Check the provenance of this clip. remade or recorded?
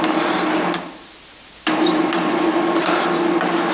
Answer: recorded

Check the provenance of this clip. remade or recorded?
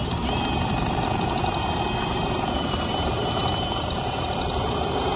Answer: remade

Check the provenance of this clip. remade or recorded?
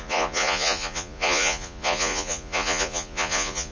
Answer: remade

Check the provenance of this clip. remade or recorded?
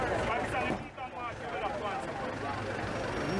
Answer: recorded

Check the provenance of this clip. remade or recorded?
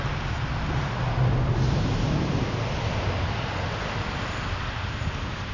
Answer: recorded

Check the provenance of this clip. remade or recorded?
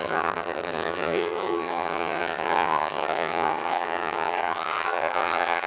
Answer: remade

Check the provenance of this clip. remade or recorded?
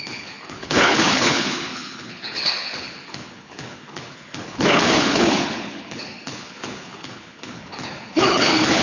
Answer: remade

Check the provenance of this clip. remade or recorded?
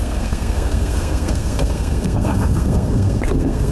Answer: remade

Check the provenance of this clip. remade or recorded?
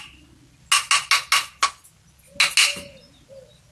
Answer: recorded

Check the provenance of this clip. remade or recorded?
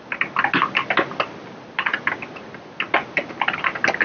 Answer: recorded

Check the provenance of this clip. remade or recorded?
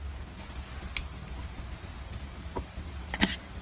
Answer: recorded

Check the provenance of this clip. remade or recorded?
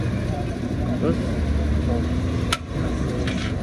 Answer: recorded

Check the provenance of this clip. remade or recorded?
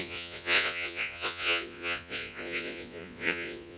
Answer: remade